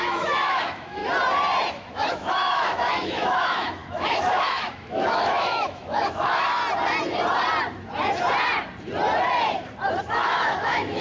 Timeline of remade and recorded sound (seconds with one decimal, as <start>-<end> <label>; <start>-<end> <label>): 0.0-1.0 remade; 1.0-1.7 recorded; 1.7-6.6 remade; 6.6-10.0 recorded; 10.0-11.0 remade